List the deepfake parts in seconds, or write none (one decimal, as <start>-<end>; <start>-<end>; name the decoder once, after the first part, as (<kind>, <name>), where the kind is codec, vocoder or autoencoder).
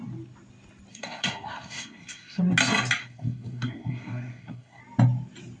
0.9-2.4 (codec, SNAC); 3.0-4.8